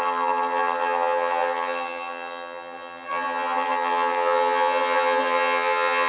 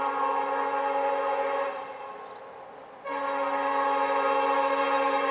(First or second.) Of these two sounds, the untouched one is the second